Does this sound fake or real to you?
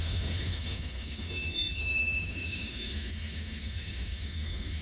fake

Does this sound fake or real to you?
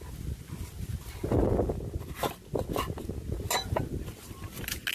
real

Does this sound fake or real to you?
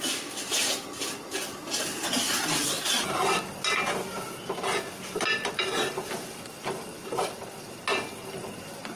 real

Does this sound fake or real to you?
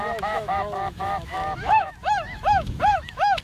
fake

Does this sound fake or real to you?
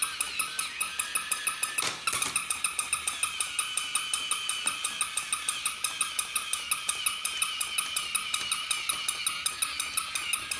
real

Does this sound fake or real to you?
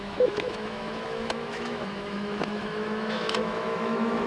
fake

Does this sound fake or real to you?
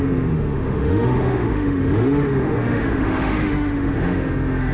fake